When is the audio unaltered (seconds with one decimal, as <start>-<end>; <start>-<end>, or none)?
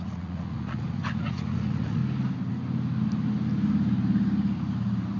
2.0-5.2